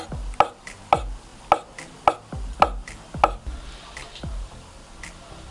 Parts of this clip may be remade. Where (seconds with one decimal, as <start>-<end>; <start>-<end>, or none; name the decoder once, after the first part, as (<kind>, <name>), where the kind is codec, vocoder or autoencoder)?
none